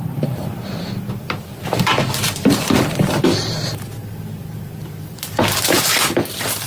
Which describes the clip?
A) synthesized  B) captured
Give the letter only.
A